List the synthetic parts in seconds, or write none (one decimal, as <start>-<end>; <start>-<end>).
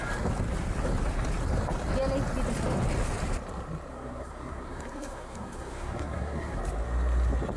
3.9-6.6